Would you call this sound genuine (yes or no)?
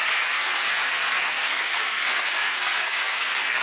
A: no